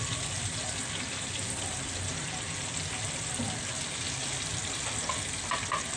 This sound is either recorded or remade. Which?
recorded